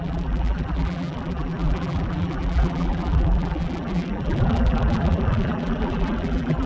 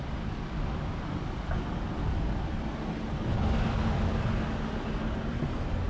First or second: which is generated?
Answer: first